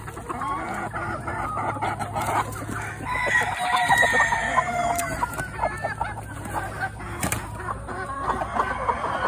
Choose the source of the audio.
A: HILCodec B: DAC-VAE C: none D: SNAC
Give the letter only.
C